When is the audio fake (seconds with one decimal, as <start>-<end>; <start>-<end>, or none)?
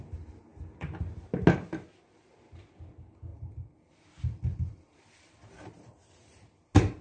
3.3-6.1